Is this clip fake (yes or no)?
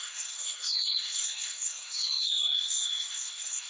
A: yes